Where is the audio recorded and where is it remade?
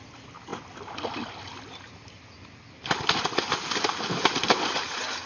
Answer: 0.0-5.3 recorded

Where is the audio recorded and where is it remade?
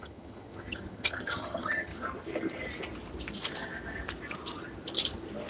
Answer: 0.0-1.9 remade; 1.9-5.5 recorded